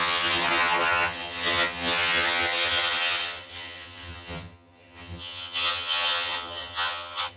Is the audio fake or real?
fake